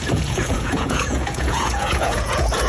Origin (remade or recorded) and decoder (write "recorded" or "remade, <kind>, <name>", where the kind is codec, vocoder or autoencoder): remade, vocoder, Vocos